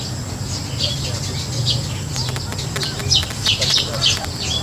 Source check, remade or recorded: recorded